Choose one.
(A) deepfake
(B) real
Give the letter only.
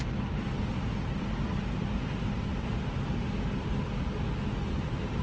B